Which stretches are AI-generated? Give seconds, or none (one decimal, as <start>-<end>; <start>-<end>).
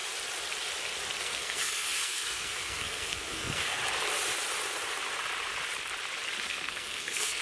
1.2-3.8; 6.4-7.4